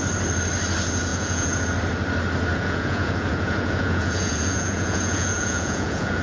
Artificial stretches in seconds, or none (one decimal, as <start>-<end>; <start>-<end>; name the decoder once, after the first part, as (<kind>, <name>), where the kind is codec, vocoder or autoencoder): 1.1-1.6 (vocoder, Vocos); 2.5-6.2